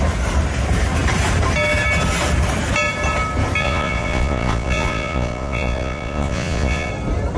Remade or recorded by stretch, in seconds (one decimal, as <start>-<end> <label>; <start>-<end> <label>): 0.0-3.6 recorded; 3.6-6.9 remade; 6.9-7.4 recorded

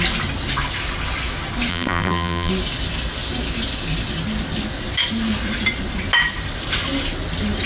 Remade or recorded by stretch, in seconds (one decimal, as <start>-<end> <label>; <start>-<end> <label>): 0.0-1.7 recorded; 1.7-2.5 remade; 2.5-7.7 recorded

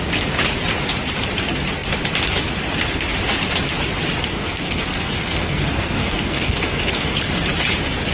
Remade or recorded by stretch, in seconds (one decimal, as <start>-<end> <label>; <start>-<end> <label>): 0.0-4.3 recorded; 4.3-7.2 remade; 7.2-8.1 recorded

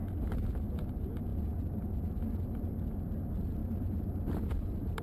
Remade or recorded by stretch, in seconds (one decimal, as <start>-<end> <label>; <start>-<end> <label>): 0.0-0.9 recorded; 0.9-5.0 remade